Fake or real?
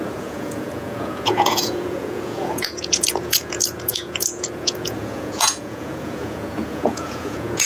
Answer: fake